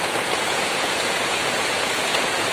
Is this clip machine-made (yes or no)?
yes